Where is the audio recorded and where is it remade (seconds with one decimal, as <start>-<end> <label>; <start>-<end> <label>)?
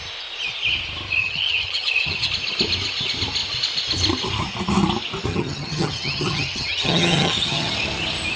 0.0-1.2 recorded; 1.2-2.3 remade; 2.3-5.3 recorded; 5.3-7.7 remade; 7.7-8.4 recorded